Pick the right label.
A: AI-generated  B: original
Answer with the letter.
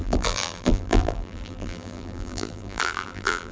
A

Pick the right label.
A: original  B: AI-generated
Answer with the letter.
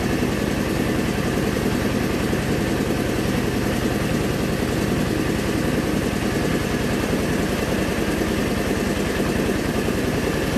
A